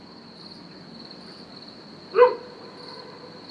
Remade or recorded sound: recorded